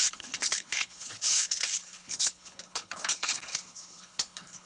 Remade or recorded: remade